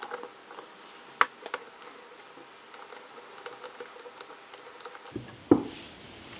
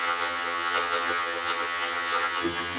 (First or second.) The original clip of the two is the first